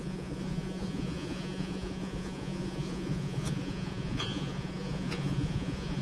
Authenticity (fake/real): fake